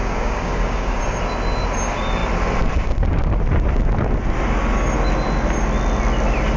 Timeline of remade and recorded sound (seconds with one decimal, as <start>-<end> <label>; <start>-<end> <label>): 0.0-1.0 remade; 1.0-6.6 recorded

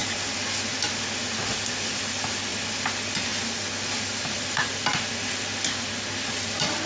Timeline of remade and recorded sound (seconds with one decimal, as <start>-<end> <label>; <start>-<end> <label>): 0.0-6.9 recorded

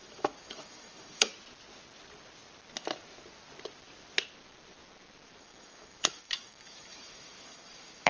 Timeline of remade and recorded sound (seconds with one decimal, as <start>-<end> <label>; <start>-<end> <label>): 0.0-1.3 remade; 1.3-5.4 recorded; 5.4-8.1 remade

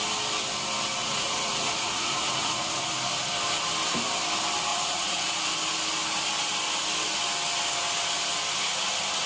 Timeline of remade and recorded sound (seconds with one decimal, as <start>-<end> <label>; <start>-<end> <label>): 0.0-1.0 recorded; 1.0-2.9 remade; 2.9-4.7 recorded; 4.7-5.2 remade; 5.2-9.3 recorded

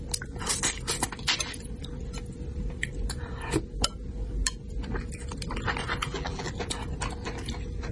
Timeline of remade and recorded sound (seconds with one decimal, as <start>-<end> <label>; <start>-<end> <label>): 0.0-6.0 recorded; 6.0-6.5 remade; 6.5-7.9 recorded